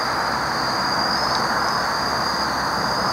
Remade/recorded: recorded